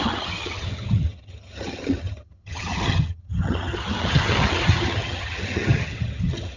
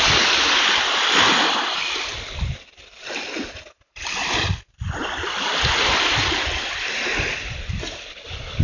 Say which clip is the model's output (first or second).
first